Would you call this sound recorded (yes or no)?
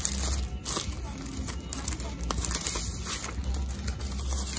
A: yes